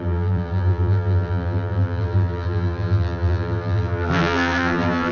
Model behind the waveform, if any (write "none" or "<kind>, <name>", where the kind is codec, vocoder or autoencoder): vocoder, BigVGAN v2